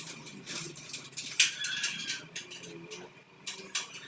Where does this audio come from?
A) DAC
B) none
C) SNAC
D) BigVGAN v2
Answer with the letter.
B